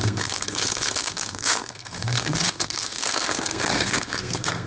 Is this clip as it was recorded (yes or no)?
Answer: no